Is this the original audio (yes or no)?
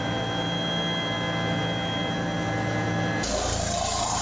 yes